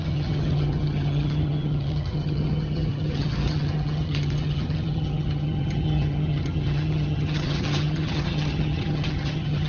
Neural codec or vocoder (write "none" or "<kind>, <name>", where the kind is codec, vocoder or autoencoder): vocoder, HiFi-GAN